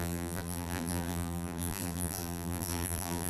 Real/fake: fake